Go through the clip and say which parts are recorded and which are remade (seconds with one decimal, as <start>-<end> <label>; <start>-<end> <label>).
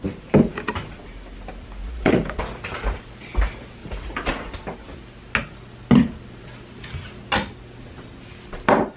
0.0-1.8 recorded; 1.8-2.4 remade; 2.4-3.8 recorded; 3.8-4.5 remade; 4.5-9.0 recorded